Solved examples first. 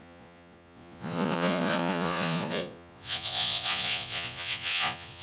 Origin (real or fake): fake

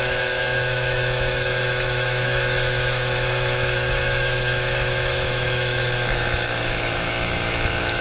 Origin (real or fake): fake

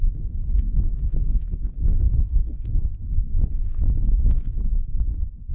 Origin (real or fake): fake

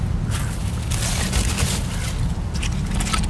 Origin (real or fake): real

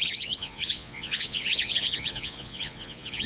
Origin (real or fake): fake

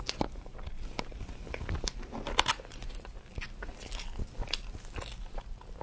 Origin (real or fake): real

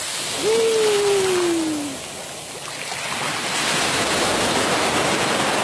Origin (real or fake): real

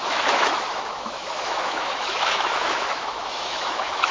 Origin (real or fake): fake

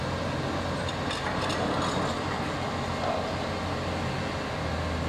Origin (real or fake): real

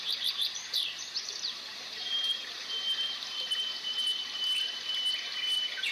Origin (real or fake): fake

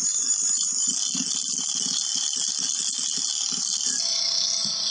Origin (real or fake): real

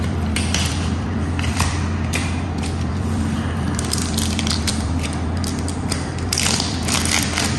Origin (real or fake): fake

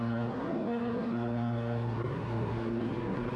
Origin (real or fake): fake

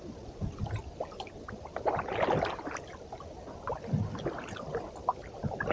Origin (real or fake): real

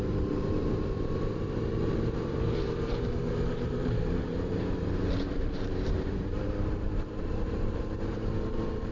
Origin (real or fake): fake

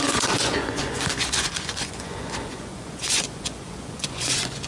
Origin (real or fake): fake